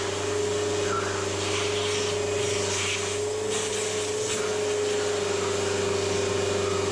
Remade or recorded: recorded